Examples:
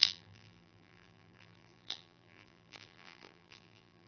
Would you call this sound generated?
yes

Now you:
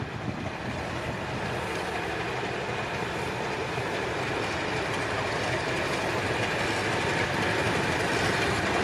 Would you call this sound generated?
no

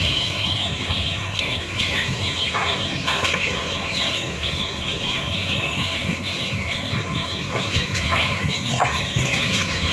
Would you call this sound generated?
yes